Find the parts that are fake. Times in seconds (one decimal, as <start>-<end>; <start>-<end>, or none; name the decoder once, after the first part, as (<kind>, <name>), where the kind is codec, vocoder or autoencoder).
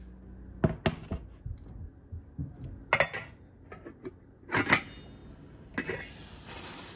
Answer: none